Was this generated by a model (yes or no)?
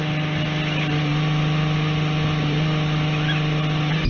no